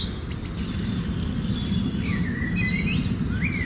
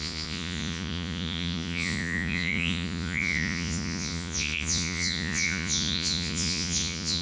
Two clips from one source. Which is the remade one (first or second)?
second